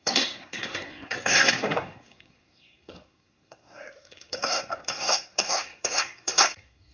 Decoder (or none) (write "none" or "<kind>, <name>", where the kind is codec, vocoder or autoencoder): codec, SNAC